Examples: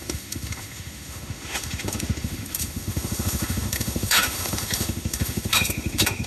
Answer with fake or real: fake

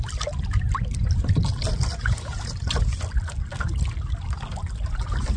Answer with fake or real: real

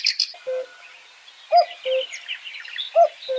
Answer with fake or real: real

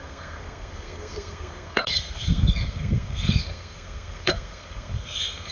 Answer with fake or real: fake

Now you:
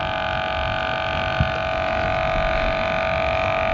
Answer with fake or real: real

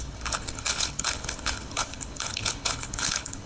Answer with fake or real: fake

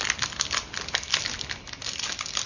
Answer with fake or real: real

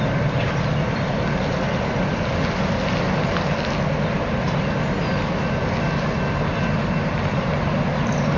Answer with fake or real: real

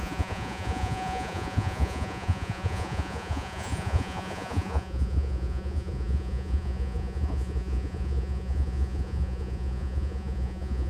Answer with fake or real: fake